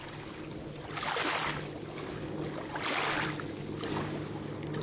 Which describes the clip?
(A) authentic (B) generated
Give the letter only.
A